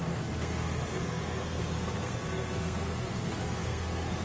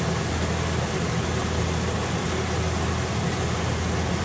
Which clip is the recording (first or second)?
second